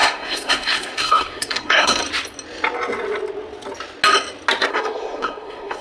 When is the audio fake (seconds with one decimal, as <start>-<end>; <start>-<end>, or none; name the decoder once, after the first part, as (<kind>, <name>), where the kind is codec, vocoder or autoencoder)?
0.0-2.0 (codec, SNAC); 4.7-5.8